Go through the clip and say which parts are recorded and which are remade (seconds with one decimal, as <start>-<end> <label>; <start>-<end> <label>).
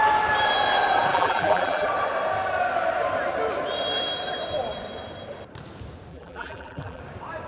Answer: 0.0-1.1 recorded; 1.1-1.9 remade; 1.9-6.1 recorded; 6.1-7.0 remade; 7.0-7.5 recorded